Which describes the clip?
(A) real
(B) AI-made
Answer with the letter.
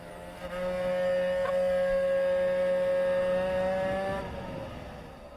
A